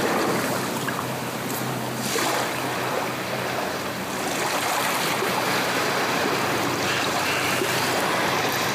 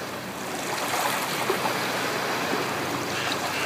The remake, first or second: first